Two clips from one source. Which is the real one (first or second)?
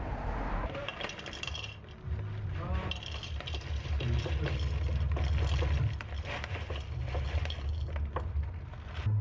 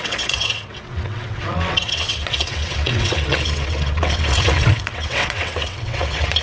first